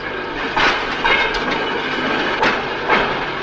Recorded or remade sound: recorded